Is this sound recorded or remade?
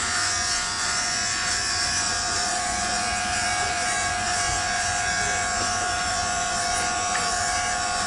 remade